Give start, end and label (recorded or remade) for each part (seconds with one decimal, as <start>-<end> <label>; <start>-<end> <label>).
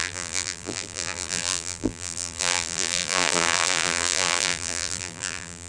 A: 0.0-5.7 remade